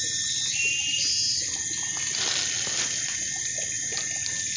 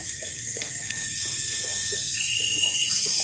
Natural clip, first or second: first